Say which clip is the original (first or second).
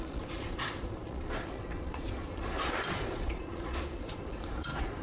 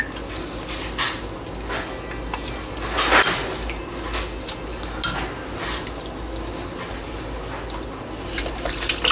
second